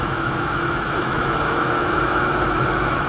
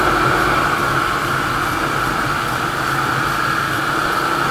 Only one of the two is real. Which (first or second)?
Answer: second